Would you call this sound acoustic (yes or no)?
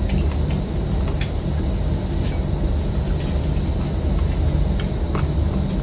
yes